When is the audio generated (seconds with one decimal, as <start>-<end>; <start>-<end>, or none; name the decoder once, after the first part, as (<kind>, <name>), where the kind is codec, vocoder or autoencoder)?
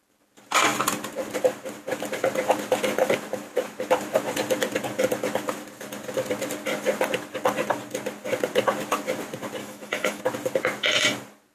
9.6-10.2 (autoencoder, DAC-VAE)